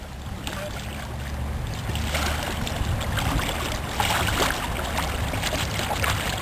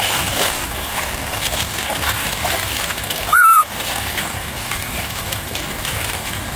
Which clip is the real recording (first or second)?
first